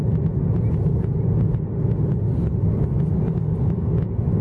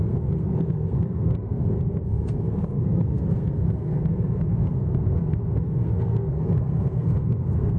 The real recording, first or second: first